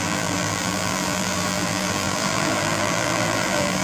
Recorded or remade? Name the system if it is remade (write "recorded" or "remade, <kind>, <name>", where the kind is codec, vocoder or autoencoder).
remade, vocoder, BigVGAN v2